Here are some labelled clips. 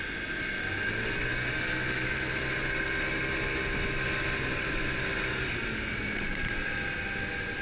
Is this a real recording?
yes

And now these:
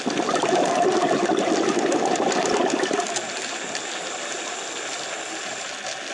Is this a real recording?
yes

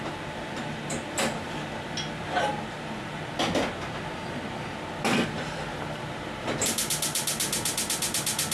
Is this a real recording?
yes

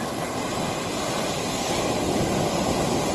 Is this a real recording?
yes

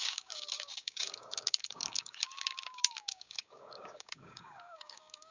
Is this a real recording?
no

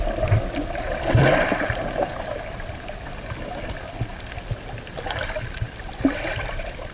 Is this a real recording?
yes